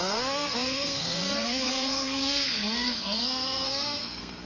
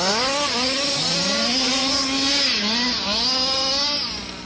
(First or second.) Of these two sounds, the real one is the second